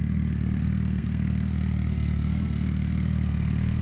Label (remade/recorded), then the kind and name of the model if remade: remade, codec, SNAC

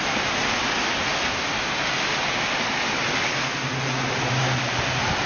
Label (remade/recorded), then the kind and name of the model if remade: recorded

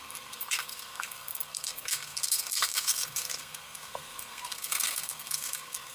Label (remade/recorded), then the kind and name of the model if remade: remade, codec, SNAC